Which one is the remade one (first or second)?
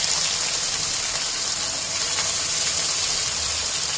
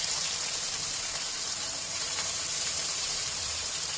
second